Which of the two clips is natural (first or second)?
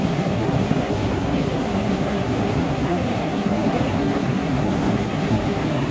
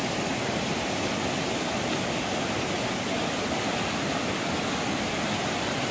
second